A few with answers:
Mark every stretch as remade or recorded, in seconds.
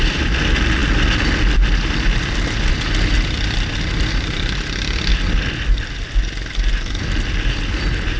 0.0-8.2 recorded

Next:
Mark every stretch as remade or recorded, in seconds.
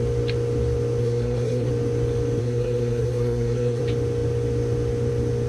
0.0-1.0 recorded; 1.0-1.7 remade; 1.7-2.4 recorded; 2.4-3.8 remade; 3.8-5.5 recorded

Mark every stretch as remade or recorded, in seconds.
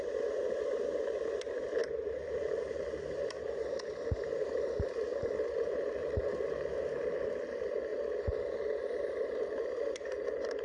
0.0-1.8 recorded; 1.8-3.5 remade; 3.5-6.0 recorded; 6.0-6.8 remade; 6.8-10.6 recorded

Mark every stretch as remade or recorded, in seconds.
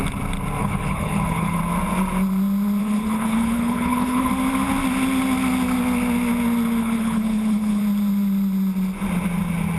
0.0-0.6 recorded; 0.6-1.6 remade; 1.6-2.8 recorded; 2.8-4.3 remade; 4.3-6.8 recorded; 6.8-7.8 remade; 7.8-9.8 recorded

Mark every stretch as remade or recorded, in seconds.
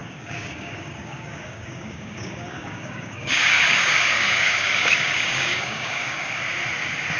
0.0-6.4 remade; 6.4-7.2 recorded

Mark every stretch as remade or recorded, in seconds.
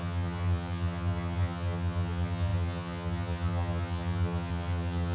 0.0-5.1 remade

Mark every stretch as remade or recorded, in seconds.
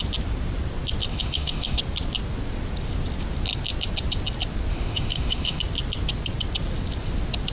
0.0-1.1 recorded; 1.1-1.8 remade; 1.8-4.7 recorded; 4.7-5.6 remade; 5.6-7.5 recorded